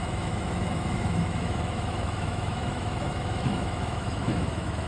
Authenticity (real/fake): fake